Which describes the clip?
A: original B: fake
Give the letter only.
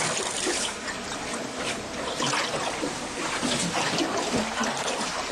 A